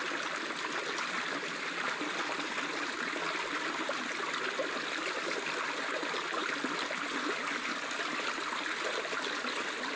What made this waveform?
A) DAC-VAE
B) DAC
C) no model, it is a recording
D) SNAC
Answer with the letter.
C